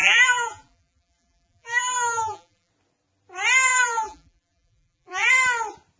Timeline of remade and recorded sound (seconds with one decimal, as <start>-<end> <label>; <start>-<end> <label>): 0.0-2.7 remade; 2.7-3.7 recorded; 3.7-5.3 remade; 5.3-6.0 recorded